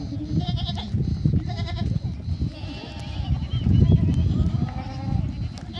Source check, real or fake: real